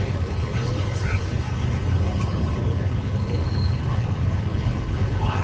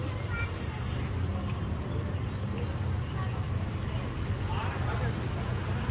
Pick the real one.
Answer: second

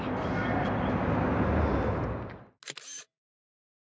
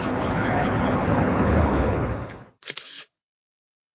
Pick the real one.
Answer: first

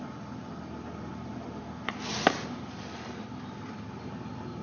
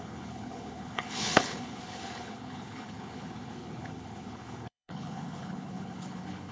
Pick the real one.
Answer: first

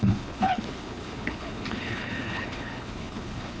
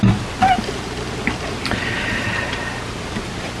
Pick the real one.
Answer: second